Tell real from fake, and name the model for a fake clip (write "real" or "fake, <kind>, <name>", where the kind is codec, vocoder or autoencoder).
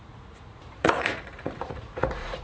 fake, vocoder, Vocos